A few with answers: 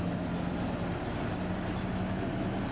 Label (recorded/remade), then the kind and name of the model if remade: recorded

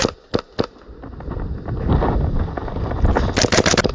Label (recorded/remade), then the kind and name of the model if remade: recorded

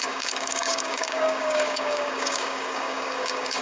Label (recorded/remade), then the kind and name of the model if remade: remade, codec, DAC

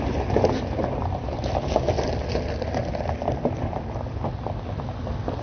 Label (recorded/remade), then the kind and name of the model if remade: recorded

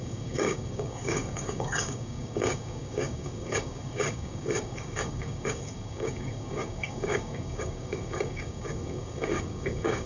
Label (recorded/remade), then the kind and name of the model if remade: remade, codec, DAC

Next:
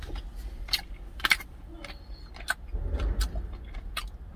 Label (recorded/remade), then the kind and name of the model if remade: recorded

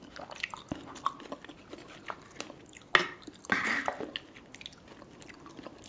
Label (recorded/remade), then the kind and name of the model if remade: recorded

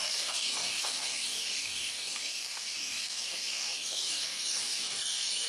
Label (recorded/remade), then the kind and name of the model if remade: remade, codec, DAC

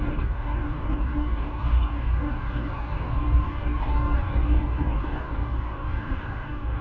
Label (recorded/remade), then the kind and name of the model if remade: remade, codec, DAC